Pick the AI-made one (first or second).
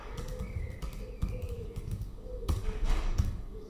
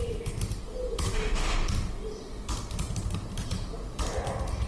first